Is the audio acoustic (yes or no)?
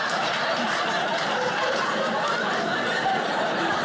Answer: yes